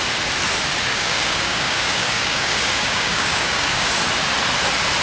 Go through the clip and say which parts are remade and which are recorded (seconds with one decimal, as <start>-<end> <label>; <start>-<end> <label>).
0.0-0.9 recorded; 0.9-3.9 remade; 3.9-5.0 recorded